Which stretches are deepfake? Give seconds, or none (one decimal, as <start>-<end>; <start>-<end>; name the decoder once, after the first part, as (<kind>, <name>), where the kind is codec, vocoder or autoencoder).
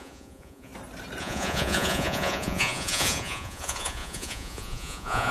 0.0-0.7 (vocoder, Vocos); 1.2-5.3